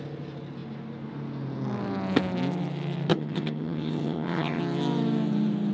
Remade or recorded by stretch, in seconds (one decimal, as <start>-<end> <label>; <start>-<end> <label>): 0.0-3.1 recorded; 3.1-4.6 remade; 4.6-5.7 recorded